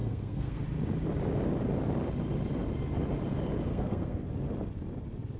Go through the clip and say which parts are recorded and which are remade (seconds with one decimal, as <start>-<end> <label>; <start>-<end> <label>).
0.0-0.6 remade; 0.6-3.7 recorded; 3.7-4.3 remade; 4.3-5.4 recorded